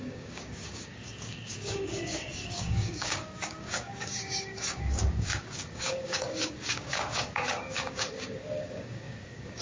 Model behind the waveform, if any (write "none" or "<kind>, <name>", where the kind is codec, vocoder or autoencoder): codec, DAC